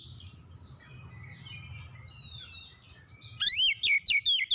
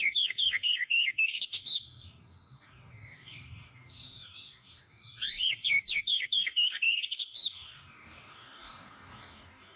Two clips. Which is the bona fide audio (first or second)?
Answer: first